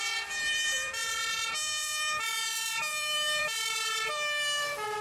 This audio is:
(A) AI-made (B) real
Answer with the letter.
A